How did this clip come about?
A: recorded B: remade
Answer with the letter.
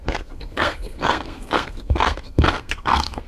B